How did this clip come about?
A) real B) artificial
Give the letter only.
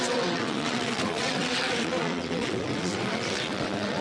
B